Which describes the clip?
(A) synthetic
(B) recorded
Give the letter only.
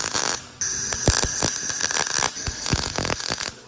B